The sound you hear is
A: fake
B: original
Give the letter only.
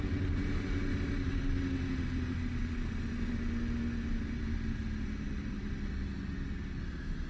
B